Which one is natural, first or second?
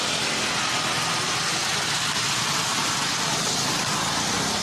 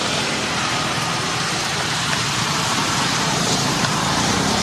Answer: first